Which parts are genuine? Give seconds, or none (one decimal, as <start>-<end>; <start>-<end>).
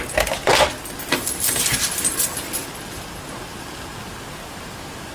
0.0-5.1